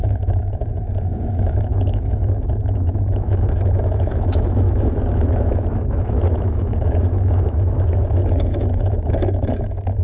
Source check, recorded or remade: remade